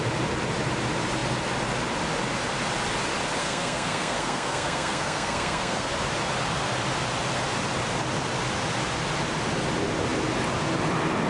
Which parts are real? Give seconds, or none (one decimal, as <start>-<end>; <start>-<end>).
0.0-3.4; 5.9-11.3